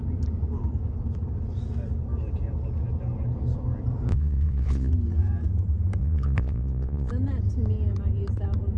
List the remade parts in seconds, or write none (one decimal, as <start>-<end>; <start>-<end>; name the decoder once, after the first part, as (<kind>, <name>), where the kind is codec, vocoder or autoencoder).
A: 4.1-4.9 (vocoder, Vocos); 6.0-7.1